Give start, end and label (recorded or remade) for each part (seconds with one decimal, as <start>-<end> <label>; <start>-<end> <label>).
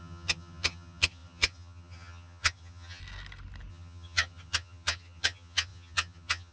0.0-3.0 remade; 3.0-3.7 recorded; 3.7-6.5 remade